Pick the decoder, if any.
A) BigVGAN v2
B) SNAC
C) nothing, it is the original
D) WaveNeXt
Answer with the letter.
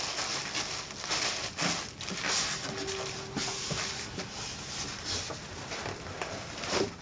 C